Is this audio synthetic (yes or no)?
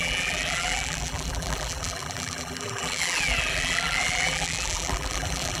yes